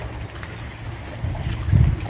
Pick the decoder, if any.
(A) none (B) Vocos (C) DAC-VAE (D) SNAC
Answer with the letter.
A